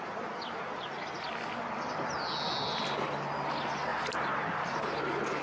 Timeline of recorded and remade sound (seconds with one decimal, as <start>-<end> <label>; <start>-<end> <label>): 0.0-5.4 recorded